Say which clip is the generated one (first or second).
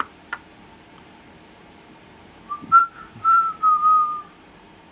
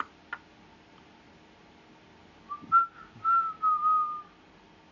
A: first